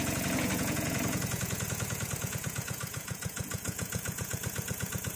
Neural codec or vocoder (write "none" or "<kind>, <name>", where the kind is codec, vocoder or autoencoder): vocoder, Vocos